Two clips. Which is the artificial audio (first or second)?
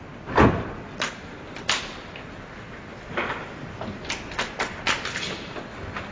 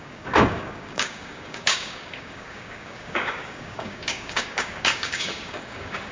second